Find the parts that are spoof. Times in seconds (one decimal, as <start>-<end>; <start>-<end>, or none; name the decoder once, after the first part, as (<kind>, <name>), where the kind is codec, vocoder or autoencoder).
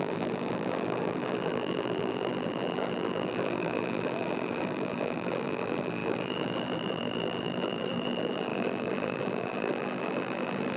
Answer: 0.0-10.8 (vocoder, BigVGAN v2)